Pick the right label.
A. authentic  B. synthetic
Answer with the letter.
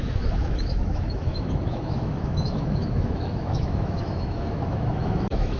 B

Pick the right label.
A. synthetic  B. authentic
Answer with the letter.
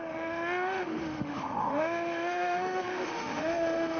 A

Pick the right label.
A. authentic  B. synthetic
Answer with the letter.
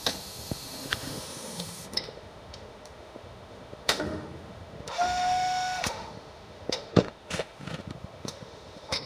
B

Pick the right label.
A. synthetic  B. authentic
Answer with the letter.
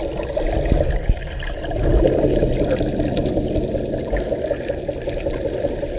B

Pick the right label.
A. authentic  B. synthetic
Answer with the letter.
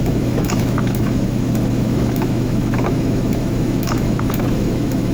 B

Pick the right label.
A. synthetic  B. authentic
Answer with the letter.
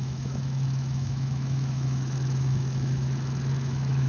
A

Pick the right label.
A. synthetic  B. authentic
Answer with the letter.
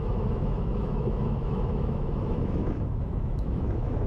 A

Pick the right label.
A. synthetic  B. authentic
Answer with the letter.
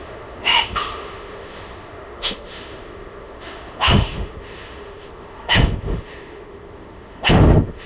A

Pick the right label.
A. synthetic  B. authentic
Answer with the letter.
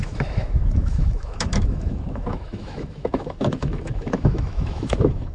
A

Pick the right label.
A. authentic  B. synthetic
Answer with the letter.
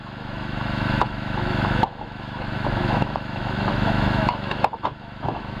B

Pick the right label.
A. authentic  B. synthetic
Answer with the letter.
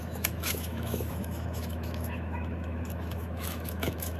B